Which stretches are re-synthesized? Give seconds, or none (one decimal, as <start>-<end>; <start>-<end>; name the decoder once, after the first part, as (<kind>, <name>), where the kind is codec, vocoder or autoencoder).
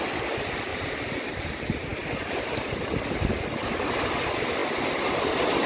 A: 0.7-1.5 (vocoder, BigVGAN v2); 1.9-3.3